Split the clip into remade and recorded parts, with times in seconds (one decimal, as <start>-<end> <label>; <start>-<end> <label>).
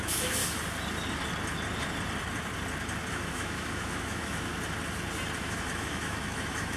0.0-0.4 remade; 0.4-3.1 recorded; 3.1-4.5 remade; 4.5-5.4 recorded; 5.4-6.8 remade